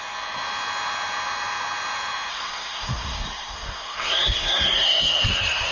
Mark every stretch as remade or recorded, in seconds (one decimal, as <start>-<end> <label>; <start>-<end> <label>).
0.0-2.3 recorded; 2.3-5.7 remade